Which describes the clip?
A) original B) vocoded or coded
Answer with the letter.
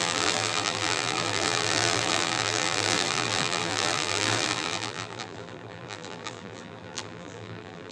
B